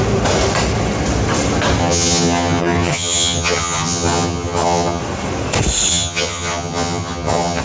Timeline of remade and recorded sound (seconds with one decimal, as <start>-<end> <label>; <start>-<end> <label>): 0.0-1.8 recorded; 1.8-5.0 remade; 5.0-5.9 recorded; 5.9-7.6 remade